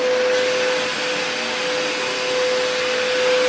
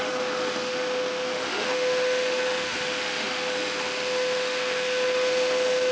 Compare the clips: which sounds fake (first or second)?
second